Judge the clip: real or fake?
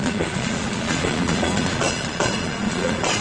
fake